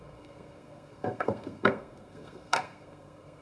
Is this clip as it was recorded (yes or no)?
no